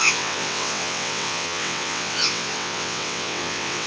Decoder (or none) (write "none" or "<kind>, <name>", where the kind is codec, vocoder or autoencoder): vocoder, WaveNeXt